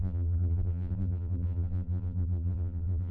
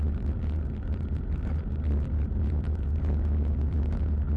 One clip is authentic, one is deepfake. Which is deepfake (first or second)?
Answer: first